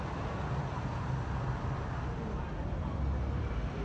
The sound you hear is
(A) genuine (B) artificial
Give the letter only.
B